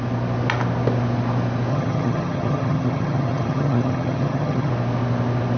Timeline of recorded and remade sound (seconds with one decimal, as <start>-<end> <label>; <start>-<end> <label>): 0.0-1.7 recorded; 1.7-4.7 remade; 4.7-5.6 recorded